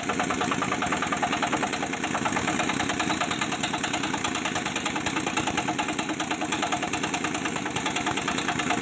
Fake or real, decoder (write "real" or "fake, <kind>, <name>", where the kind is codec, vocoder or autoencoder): real